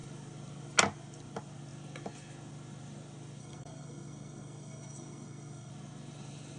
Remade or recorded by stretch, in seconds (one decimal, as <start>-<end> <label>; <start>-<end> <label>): 0.0-3.4 recorded; 3.4-5.7 remade; 5.7-6.6 recorded